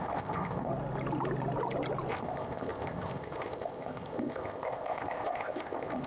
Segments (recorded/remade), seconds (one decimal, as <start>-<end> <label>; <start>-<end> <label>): 0.0-0.7 remade; 0.7-2.1 recorded; 2.1-6.1 remade